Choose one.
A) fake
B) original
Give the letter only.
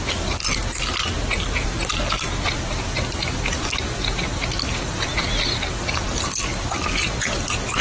B